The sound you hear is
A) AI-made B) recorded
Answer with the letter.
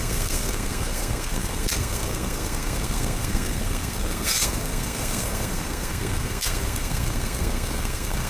A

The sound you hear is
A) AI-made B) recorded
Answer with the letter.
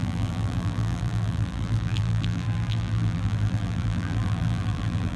A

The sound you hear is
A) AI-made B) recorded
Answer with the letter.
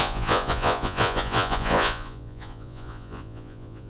A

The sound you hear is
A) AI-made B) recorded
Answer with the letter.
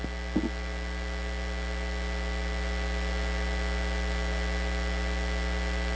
B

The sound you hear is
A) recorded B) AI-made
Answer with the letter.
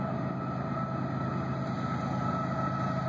A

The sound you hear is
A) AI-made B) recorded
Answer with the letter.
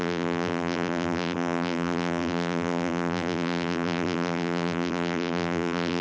A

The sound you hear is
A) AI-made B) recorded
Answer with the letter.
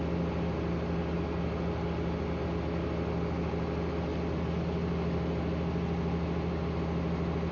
B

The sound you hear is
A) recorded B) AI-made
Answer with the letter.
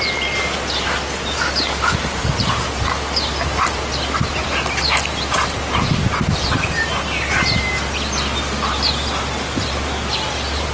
A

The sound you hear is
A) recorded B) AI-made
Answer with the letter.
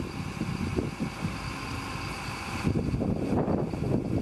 A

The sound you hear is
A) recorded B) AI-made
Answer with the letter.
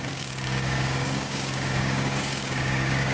B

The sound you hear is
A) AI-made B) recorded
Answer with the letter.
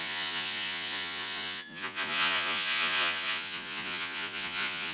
A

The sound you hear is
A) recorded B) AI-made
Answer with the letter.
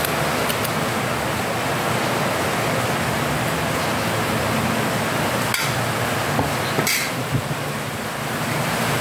A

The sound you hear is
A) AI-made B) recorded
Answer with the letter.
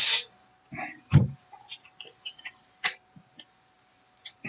A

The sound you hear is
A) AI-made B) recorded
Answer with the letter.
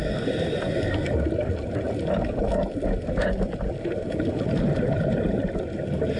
B